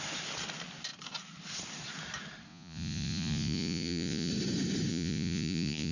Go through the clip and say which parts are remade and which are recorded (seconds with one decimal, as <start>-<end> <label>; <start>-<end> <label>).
0.0-2.5 recorded; 2.5-4.3 remade; 4.3-4.9 recorded; 4.9-5.9 remade